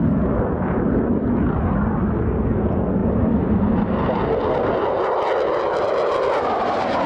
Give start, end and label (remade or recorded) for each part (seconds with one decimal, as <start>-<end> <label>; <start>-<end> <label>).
0.0-7.1 recorded